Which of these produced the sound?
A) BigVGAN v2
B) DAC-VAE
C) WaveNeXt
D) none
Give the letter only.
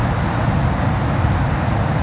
D